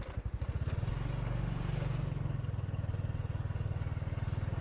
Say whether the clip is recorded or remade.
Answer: recorded